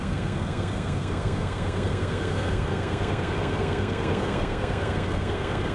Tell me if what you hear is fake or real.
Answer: fake